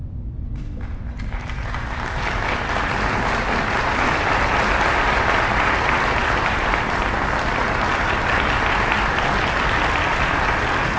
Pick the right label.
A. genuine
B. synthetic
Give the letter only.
A